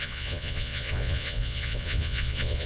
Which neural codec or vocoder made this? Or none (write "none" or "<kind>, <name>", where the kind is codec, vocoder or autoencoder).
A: vocoder, Vocos